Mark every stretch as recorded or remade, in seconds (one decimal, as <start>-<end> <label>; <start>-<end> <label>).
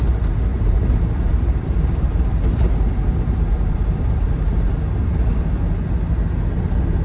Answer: 0.0-0.5 recorded; 0.5-4.7 remade; 4.7-7.0 recorded